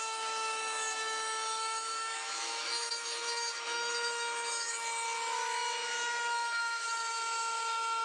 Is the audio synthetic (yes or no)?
yes